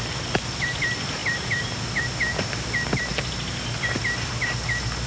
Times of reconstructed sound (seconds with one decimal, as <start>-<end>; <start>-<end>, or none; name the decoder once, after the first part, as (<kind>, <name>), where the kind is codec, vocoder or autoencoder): none